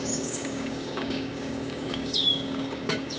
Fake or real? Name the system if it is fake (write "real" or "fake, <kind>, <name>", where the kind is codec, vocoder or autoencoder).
fake, codec, DAC